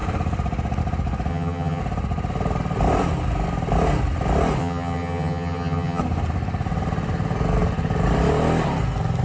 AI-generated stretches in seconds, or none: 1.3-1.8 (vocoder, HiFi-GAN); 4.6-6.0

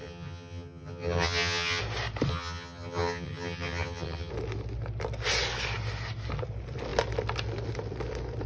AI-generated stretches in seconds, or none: 0.0-1.8 (vocoder, HiFi-GAN); 2.3-4.3

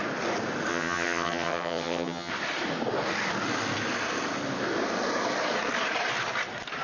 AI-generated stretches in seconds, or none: 0.7-2.3 (vocoder, HiFi-GAN)

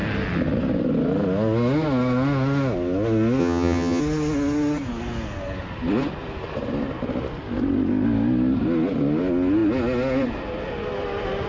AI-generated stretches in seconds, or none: 3.4-4.0 (vocoder, HiFi-GAN)

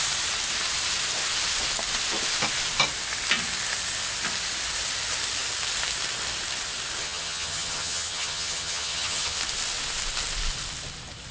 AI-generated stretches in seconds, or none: 7.0-9.4 (vocoder, HiFi-GAN)

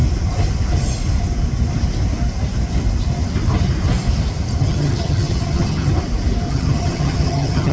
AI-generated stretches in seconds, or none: 4.6-5.9 (vocoder, HiFi-GAN); 6.5-7.7

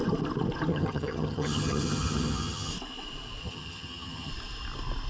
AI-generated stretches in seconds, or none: 0.7-2.7 (vocoder, HiFi-GAN); 3.4-4.3

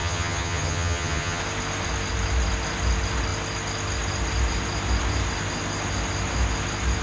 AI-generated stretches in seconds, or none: 0.0-1.4 (vocoder, HiFi-GAN)